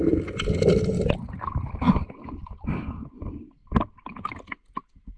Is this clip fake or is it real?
real